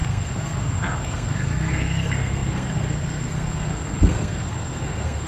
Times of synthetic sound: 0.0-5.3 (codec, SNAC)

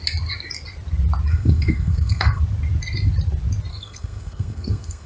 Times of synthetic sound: 1.3-2.4 (codec, SNAC); 3.7-5.1

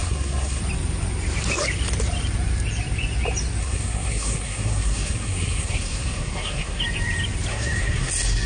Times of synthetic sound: 0.0-0.6 (codec, SNAC); 3.6-6.8; 7.5-8.1

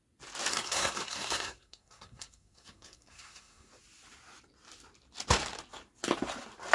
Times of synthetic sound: 0.5-3.7 (codec, SNAC)